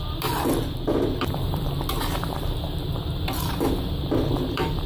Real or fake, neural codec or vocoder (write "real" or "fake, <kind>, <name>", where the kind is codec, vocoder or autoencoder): fake, vocoder, BigVGAN v2